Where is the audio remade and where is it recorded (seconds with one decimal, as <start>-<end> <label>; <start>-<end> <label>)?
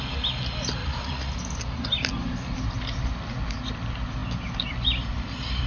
0.0-0.8 recorded; 0.8-1.3 remade; 1.3-5.7 recorded